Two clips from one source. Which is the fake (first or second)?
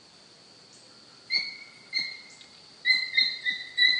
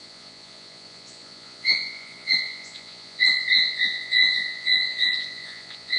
second